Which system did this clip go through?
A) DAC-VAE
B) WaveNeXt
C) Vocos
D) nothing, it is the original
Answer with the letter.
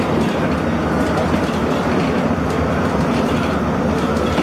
D